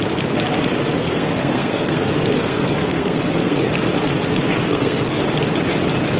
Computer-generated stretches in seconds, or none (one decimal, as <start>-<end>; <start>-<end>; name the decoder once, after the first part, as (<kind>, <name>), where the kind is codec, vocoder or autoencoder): 1.0-3.7 (codec, SNAC); 4.6-5.2